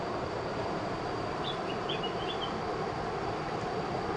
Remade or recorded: recorded